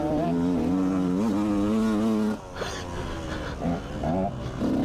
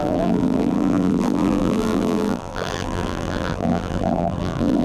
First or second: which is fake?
second